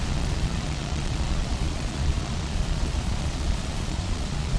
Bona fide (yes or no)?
no